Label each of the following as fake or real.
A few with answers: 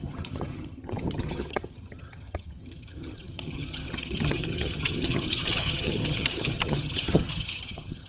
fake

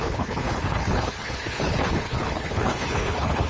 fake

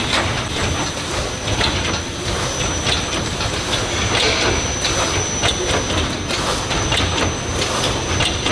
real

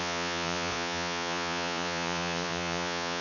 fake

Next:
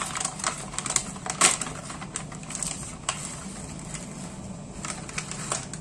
real